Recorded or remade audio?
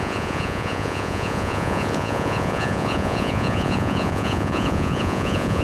remade